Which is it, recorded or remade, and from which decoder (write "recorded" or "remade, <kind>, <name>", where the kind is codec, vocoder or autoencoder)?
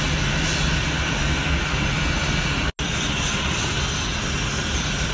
recorded